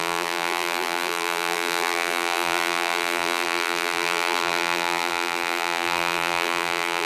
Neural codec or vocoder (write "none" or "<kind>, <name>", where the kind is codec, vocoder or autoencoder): vocoder, BigVGAN v2